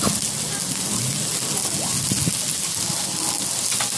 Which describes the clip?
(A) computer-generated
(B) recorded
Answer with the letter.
B